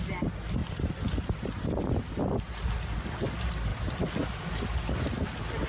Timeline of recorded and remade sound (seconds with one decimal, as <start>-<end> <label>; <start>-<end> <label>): 0.0-5.7 recorded